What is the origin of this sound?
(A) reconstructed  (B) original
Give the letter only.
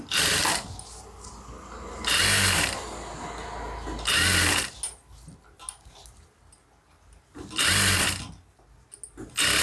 B